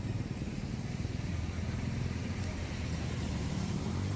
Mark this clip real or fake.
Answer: fake